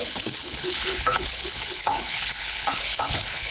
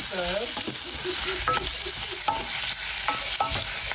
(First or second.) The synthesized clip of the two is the first